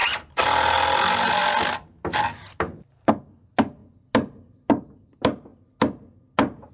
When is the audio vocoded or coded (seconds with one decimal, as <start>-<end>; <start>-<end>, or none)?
none

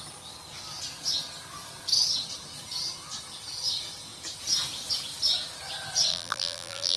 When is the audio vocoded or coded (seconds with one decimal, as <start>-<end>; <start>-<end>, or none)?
6.1-7.0

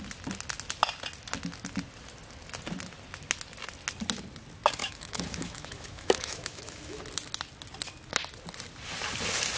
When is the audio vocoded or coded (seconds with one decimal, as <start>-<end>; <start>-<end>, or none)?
4.8-7.0

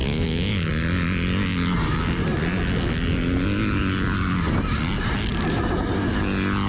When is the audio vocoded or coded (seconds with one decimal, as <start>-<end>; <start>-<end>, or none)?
0.0-0.7

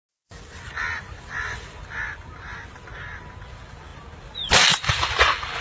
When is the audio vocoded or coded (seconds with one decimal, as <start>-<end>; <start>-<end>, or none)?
none

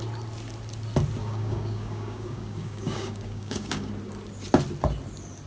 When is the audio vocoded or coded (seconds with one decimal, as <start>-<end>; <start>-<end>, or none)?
1.2-3.9

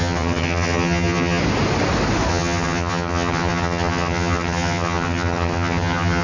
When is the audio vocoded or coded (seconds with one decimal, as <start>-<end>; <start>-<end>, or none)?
0.0-1.4; 2.3-6.2